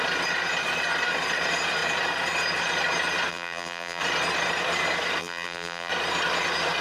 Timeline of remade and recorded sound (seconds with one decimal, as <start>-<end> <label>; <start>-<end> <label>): 0.0-3.3 recorded; 3.3-4.0 remade; 4.0-5.2 recorded; 5.2-5.9 remade; 5.9-6.8 recorded